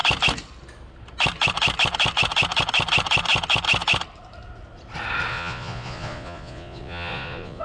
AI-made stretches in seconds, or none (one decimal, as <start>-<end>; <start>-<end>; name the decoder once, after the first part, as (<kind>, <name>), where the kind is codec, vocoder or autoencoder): 5.3-7.6 (vocoder, Vocos)